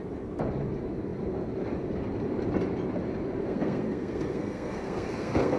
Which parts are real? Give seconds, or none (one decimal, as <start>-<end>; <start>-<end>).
0.0-3.4